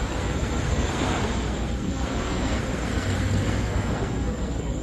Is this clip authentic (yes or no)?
no